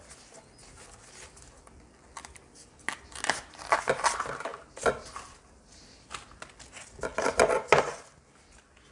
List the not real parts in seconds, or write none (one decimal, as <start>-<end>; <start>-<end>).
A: 4.5-6.0